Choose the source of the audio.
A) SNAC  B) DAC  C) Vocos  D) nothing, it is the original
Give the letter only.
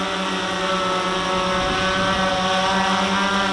D